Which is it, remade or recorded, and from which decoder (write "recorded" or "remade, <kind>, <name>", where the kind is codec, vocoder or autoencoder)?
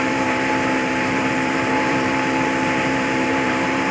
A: remade, vocoder, BigVGAN v2